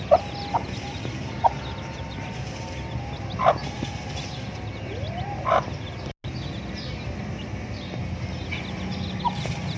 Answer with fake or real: real